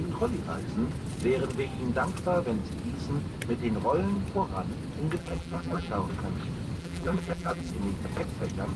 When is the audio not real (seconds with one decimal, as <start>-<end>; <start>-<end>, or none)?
5.2-5.9; 6.8-7.7